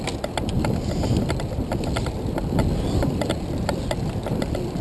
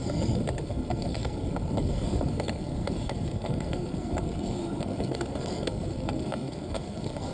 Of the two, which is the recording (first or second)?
first